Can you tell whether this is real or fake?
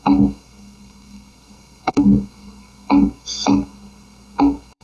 fake